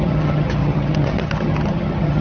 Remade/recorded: remade